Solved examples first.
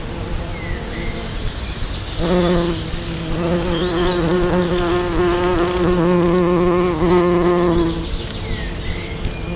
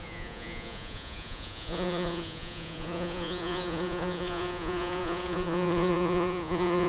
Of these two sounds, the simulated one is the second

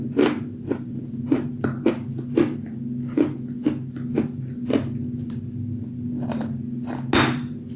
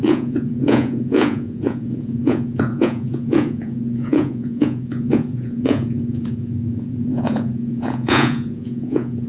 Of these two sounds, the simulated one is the second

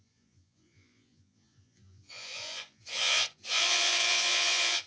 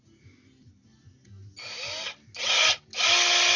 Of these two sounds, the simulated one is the first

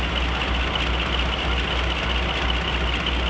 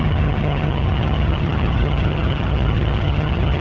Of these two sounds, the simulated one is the second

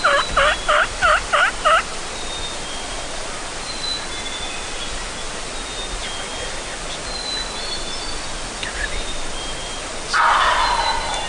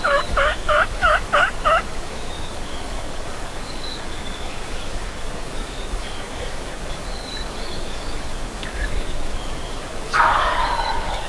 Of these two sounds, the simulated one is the second